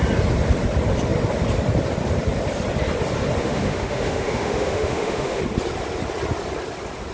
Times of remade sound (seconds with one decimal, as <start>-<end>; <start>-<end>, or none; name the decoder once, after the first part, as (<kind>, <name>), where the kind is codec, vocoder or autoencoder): 3.4-5.4 (autoencoder, DAC-VAE)